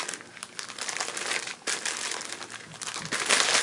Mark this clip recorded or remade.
recorded